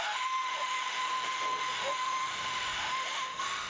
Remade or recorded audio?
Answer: remade